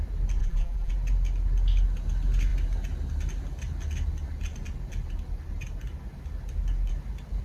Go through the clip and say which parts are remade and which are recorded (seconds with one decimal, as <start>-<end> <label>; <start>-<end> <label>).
0.0-0.4 recorded; 0.4-0.9 remade; 0.9-7.4 recorded